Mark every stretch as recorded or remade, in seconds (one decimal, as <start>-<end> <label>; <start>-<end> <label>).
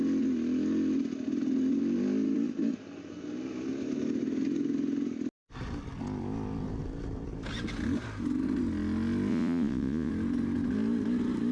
0.0-9.3 recorded; 9.3-10.1 remade; 10.1-11.5 recorded